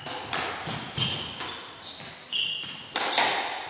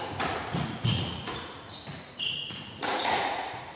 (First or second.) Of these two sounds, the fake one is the second